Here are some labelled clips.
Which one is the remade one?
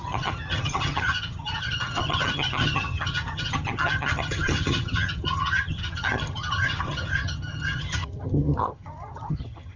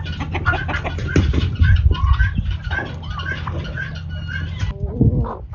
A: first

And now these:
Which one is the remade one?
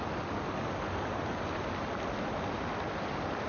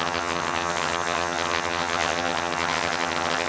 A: second